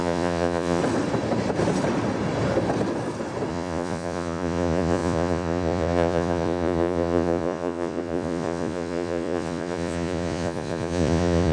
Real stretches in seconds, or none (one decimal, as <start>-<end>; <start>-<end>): 0.8-3.5